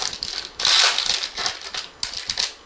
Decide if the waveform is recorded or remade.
recorded